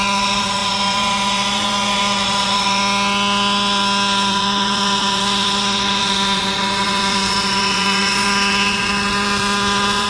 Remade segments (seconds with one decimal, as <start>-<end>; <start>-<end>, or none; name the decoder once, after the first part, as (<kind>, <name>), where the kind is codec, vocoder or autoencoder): 0.0-2.8 (vocoder, Vocos); 4.3-10.1